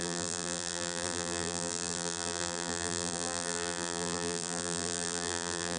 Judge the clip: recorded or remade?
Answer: remade